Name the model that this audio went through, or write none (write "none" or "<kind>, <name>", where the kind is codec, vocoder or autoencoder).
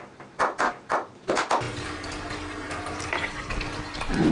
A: none